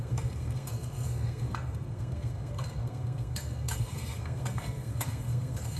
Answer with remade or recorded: remade